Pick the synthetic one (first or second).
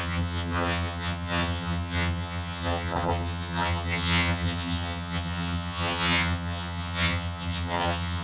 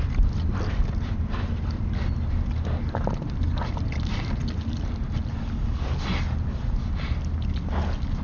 first